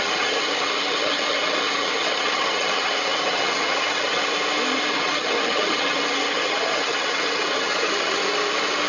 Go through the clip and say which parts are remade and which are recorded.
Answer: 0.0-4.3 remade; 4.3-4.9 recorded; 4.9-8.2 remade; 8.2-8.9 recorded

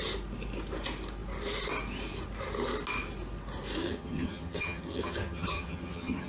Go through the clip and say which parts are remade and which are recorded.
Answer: 0.0-3.8 recorded; 3.8-6.3 remade